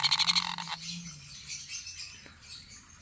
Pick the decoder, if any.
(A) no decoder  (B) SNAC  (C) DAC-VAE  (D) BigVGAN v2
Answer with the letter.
A